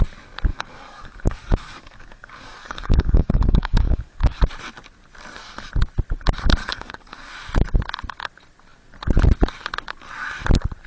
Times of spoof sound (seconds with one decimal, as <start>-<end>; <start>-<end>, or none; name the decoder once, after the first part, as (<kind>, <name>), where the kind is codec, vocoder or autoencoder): 0.5-4.4 (codec, DAC); 6.6-7.3